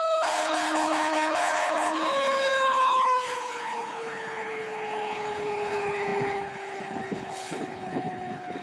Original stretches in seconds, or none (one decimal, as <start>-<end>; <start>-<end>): none